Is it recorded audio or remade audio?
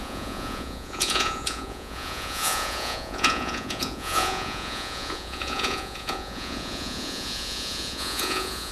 remade